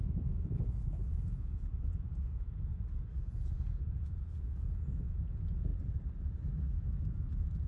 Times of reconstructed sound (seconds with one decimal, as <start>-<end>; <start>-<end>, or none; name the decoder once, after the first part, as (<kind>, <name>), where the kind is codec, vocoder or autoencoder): 0.0-2.7 (vocoder, Vocos); 3.2-5.7; 6.7-7.7